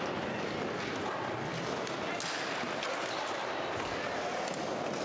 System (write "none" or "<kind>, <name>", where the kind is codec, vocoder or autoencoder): none